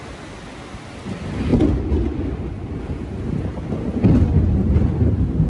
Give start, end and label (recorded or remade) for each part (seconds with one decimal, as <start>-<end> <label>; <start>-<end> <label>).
0.0-5.5 recorded